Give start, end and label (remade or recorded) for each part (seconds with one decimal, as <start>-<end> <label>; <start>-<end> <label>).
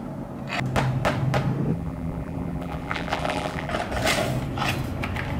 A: 0.0-1.7 recorded; 1.7-3.7 remade; 3.7-5.4 recorded